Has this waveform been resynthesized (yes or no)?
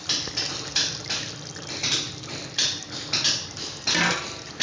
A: no